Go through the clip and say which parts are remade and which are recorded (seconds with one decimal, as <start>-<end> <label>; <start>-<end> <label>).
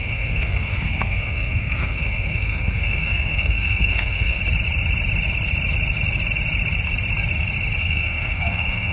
0.0-4.4 remade; 4.4-7.8 recorded; 7.8-8.9 remade